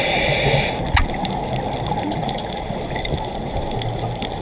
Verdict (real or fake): real